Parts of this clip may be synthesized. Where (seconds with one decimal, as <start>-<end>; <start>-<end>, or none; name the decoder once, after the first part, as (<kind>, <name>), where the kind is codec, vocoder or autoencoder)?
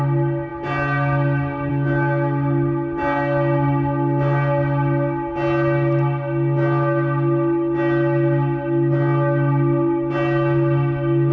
none